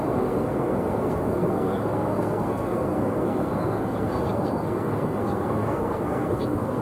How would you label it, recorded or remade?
remade